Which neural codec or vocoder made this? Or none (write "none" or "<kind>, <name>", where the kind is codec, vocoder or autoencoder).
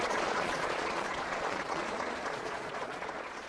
vocoder, Vocos